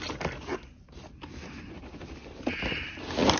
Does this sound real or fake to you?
fake